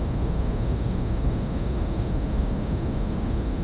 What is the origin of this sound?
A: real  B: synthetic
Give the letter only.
B